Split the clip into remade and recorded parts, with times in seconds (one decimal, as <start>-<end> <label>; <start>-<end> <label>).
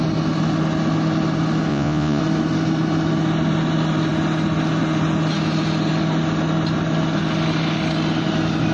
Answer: 0.0-1.7 recorded; 1.7-2.2 remade; 2.2-8.7 recorded